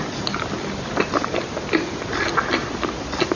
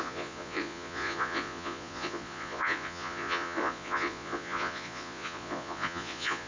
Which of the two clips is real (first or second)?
first